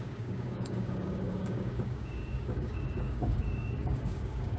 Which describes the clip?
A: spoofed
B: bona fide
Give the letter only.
A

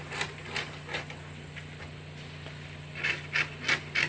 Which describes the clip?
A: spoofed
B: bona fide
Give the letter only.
B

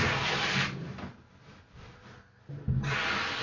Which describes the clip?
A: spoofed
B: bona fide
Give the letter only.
B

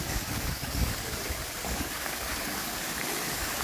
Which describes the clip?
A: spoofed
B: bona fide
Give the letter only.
A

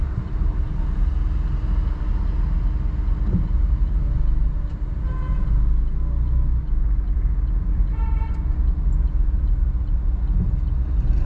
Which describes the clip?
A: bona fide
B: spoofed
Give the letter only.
A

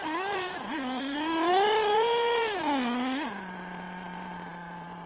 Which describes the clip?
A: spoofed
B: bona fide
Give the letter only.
A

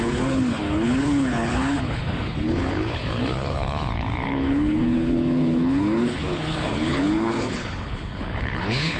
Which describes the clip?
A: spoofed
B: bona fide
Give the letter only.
A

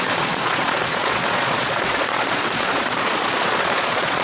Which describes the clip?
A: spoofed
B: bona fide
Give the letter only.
A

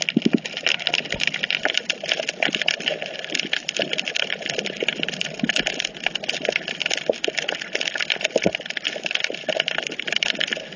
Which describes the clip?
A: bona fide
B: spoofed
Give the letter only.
A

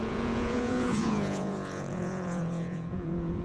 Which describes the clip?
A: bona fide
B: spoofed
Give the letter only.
B